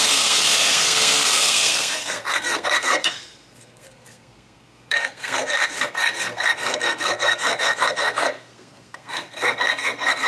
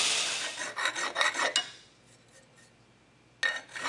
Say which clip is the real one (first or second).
second